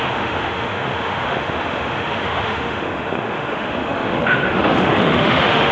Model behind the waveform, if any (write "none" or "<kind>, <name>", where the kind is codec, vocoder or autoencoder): autoencoder, DAC-VAE